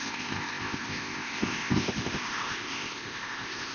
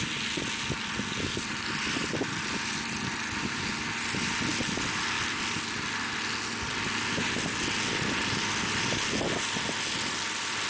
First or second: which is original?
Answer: second